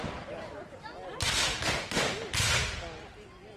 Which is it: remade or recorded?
recorded